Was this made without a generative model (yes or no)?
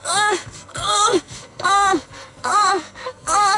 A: no